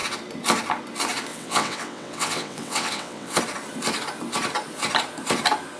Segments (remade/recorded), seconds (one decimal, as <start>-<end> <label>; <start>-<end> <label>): 0.0-1.3 recorded; 1.3-3.4 remade; 3.4-5.8 recorded